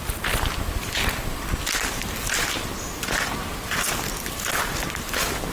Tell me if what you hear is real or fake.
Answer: real